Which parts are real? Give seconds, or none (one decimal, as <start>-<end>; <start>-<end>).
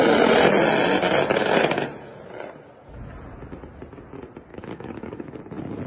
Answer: 0.0-4.5; 5.4-5.9